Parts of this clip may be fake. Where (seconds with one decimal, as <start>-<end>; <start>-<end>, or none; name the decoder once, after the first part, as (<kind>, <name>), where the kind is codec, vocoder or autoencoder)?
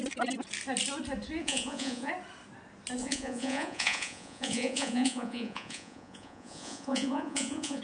1.4-2.1 (vocoder, Vocos); 3.0-7.8